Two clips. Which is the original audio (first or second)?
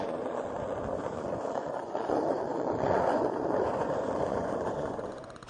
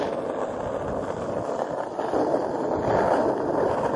second